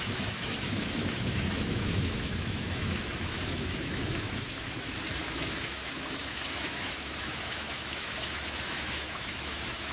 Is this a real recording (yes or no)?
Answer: no